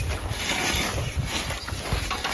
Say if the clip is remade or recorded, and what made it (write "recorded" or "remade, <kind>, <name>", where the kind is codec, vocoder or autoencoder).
recorded